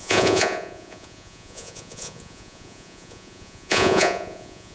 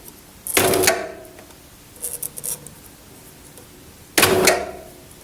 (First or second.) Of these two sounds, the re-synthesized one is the first